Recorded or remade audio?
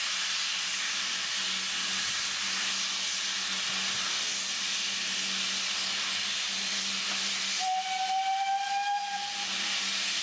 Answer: recorded